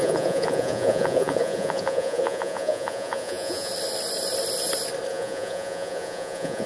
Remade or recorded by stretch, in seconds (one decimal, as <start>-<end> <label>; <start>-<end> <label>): 0.0-3.7 remade; 3.7-5.1 recorded; 5.1-6.7 remade

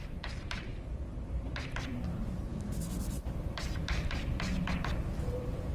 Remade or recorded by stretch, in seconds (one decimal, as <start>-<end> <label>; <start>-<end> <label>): 0.0-0.7 remade; 0.7-1.3 recorded; 1.3-5.7 remade